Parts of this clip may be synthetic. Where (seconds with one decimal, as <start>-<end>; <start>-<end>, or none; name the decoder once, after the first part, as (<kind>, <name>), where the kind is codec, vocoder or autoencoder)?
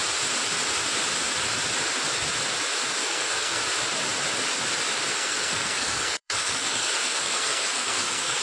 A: 3.0-3.6 (codec, SNAC); 5.1-8.4